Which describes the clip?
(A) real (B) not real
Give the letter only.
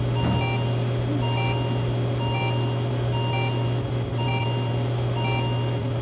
A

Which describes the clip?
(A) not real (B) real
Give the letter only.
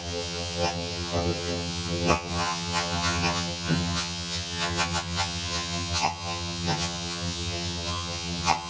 A